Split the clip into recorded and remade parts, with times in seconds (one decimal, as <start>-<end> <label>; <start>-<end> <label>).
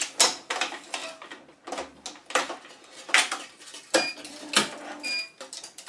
0.0-5.9 recorded